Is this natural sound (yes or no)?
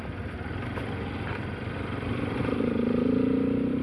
yes